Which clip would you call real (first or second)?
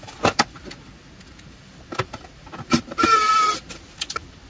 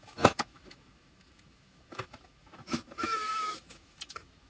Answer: first